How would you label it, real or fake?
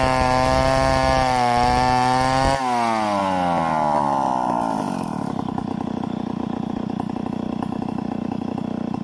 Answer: real